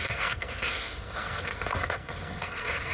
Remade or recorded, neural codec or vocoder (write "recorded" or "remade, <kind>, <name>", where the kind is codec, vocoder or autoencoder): remade, codec, SNAC